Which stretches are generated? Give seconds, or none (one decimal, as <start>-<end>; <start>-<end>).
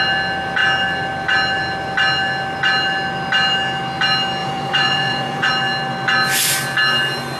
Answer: 4.4-5.5